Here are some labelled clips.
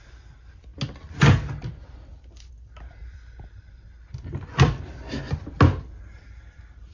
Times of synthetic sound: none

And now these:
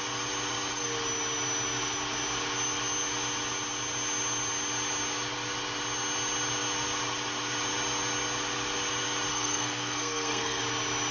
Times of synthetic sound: 9.3-10.6 (codec, SNAC)

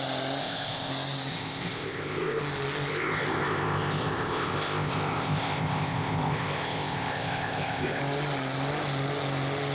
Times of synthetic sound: 0.4-0.9 (codec, ZipCodec); 1.3-2.4; 2.9-8.0

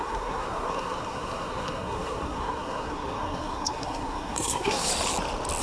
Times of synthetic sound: 0.0-4.9 (codec, SNAC)

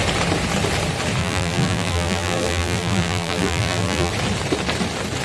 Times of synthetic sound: 1.2-4.1 (vocoder, BigVGAN v2)

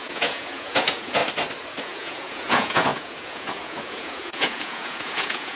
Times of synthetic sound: 0.0-1.2 (vocoder, Vocos); 1.8-5.6

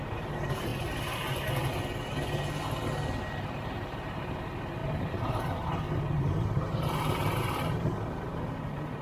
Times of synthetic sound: 0.0-0.7 (vocoder, BigVGAN v2); 3.2-9.0